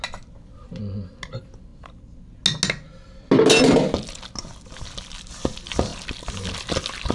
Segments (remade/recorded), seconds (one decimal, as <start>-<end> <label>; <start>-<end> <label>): 0.0-7.1 recorded